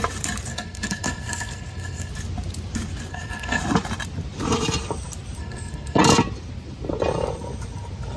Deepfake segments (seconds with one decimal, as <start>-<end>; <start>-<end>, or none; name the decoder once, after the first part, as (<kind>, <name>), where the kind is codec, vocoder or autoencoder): 0.5-2.1 (codec, SNAC); 3.1-3.6; 5.4-6.0